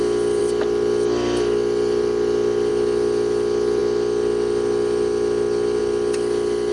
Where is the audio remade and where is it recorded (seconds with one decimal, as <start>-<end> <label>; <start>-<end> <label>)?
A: 0.0-6.7 recorded